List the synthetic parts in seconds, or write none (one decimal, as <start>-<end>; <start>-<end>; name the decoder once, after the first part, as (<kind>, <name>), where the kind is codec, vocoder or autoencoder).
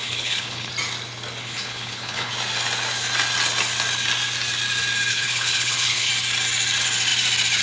0.0-0.7 (codec, HILCodec); 1.4-2.3; 5.1-6.1